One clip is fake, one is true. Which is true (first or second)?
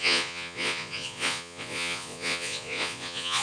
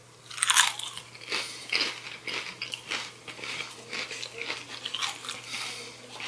second